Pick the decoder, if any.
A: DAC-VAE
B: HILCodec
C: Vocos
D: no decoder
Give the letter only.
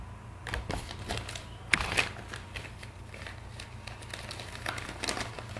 D